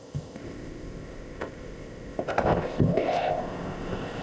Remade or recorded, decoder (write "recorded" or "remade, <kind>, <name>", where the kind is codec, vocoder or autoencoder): remade, codec, ZipCodec